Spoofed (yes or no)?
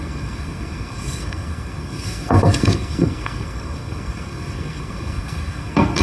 yes